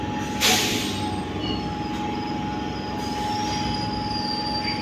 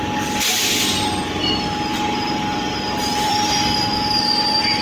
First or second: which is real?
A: first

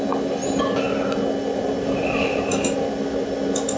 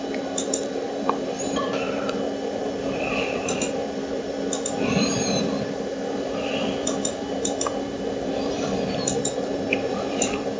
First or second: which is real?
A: first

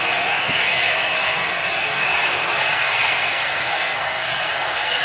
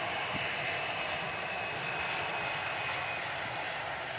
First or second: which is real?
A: second